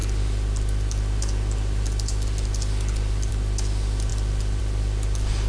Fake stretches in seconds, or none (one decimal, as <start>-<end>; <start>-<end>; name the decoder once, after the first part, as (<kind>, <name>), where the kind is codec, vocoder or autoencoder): none